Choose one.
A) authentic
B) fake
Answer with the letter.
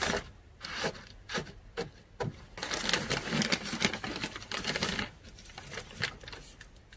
A